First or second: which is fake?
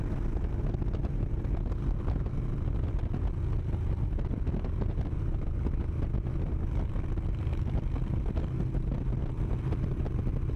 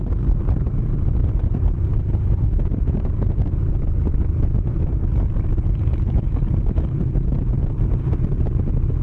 second